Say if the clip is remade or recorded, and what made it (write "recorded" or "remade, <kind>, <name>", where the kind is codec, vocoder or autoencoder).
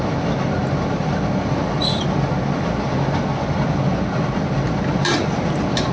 recorded